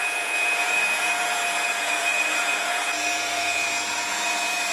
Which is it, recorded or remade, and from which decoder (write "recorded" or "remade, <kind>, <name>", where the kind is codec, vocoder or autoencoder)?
remade, vocoder, Vocos